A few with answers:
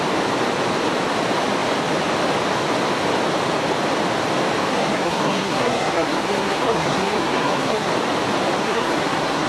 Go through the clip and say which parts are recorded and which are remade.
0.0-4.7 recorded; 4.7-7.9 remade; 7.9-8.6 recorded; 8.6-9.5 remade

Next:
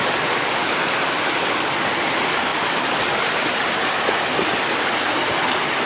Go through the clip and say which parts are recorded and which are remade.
0.0-5.9 recorded

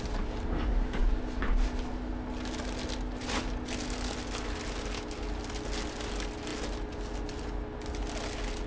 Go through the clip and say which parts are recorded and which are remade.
0.0-8.7 recorded